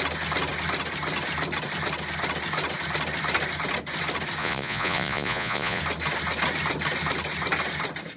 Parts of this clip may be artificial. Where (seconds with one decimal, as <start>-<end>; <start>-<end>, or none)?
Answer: 4.4-5.8